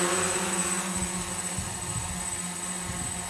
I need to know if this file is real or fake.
real